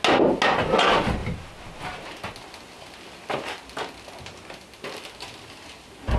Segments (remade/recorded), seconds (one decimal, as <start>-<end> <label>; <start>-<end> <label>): 0.0-6.2 recorded